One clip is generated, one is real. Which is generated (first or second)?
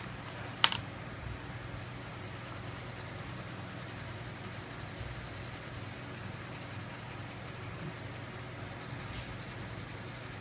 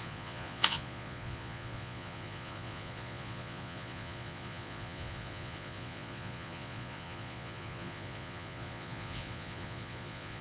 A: second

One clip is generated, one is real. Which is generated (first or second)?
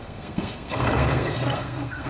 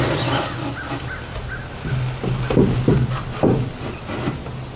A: first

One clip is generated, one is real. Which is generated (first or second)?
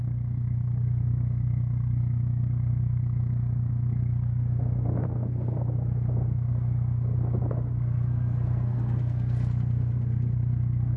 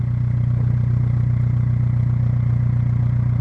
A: first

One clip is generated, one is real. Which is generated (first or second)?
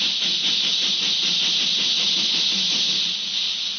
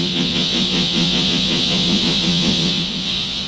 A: second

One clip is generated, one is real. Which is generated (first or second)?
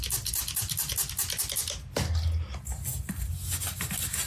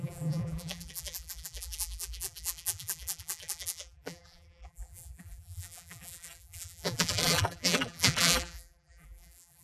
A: second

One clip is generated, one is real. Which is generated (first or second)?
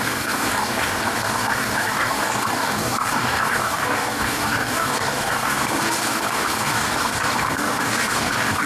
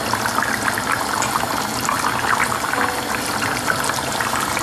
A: first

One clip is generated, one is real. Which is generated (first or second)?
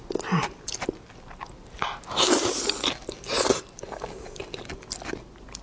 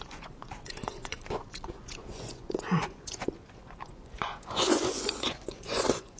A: second